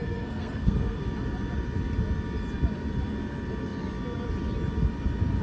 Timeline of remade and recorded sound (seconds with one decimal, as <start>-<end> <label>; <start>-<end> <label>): 0.0-1.0 remade; 1.0-5.4 recorded